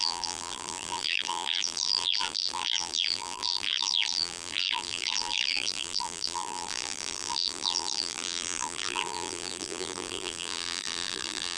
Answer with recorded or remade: remade